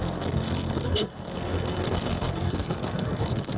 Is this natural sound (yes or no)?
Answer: no